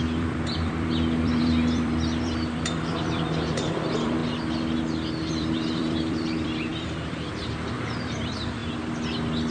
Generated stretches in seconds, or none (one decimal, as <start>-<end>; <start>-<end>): 0.0-4.2; 5.3-8.6